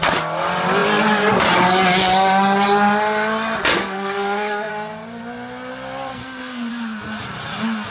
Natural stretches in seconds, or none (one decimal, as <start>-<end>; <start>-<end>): 0.0-3.7; 4.7-6.1; 6.7-7.9